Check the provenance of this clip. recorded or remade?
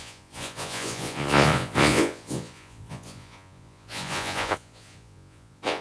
remade